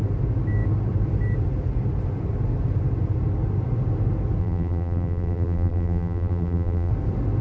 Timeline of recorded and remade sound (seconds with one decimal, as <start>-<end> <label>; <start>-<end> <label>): 0.0-4.4 recorded; 4.4-6.9 remade; 6.9-7.4 recorded